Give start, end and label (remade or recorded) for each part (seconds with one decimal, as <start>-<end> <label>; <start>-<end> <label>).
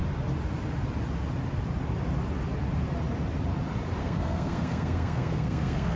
0.0-4.0 recorded; 4.0-6.0 remade